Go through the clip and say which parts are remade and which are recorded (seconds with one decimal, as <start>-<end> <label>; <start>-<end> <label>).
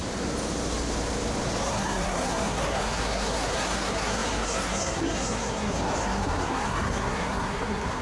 0.0-1.6 recorded; 1.6-8.0 remade